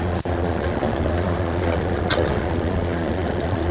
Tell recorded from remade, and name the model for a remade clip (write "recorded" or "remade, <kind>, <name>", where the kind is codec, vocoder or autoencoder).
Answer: remade, vocoder, Vocos